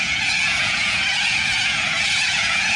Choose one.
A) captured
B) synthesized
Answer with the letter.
B